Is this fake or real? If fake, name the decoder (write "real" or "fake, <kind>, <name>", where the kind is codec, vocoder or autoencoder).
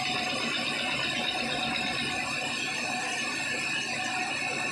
real